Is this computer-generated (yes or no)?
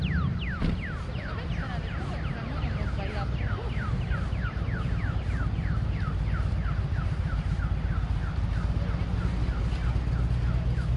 no